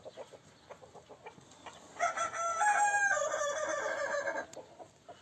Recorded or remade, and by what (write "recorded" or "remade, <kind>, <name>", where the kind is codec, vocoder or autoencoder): recorded